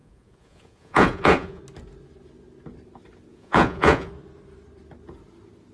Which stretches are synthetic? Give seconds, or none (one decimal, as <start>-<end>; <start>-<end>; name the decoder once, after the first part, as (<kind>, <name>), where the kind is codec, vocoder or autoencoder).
0.0-1.6 (vocoder, Vocos); 3.3-4.1

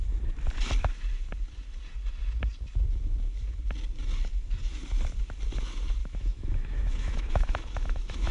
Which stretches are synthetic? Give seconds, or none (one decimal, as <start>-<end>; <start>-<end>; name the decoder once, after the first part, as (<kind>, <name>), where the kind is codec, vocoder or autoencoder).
6.0-8.3 (autoencoder, DAC-VAE)

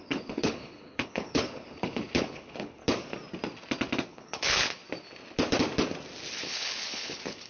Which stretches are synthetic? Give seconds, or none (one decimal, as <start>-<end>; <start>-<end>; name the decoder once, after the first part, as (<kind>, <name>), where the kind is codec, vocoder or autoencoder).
0.0-2.8 (codec, HILCodec); 4.1-4.8; 6.4-7.5

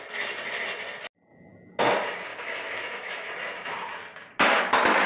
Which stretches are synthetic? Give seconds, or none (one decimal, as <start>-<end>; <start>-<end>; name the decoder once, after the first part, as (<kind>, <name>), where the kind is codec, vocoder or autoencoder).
2.3-3.3 (autoencoder, DAC-VAE)

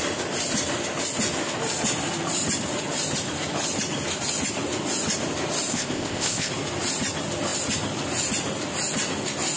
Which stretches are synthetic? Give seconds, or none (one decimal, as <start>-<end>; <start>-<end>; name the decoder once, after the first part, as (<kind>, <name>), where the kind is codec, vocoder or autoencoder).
5.7-6.5 (codec, ZipCodec)

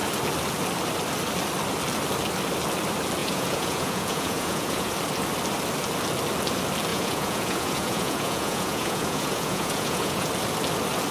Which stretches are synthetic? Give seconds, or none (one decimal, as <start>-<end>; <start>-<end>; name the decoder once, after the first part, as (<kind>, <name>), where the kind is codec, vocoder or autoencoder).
3.2-4.9 (vocoder, Vocos); 6.9-10.3

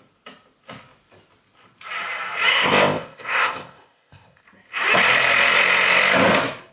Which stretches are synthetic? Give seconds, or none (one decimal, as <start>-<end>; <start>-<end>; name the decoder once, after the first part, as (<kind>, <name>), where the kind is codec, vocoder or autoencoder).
2.5-4.4 (codec, ZipCodec)

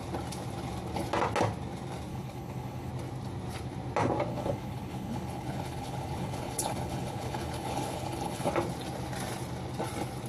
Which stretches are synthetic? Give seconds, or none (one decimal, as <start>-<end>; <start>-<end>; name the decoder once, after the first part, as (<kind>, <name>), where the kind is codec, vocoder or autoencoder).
2.1-2.9 (codec, HILCodec); 4.3-8.5